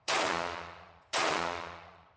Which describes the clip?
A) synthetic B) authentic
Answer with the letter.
A